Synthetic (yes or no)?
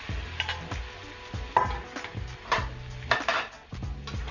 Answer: no